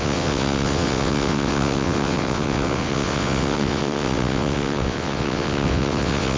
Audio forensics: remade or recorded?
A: remade